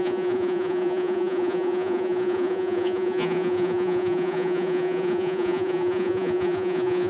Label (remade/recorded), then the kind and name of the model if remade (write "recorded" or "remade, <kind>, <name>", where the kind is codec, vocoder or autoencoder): remade, vocoder, Vocos